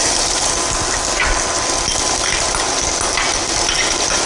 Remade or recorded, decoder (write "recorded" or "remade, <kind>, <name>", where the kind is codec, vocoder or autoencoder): recorded